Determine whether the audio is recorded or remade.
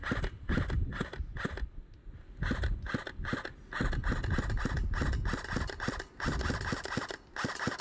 recorded